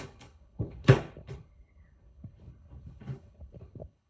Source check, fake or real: fake